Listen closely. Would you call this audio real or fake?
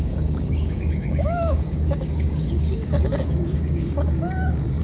fake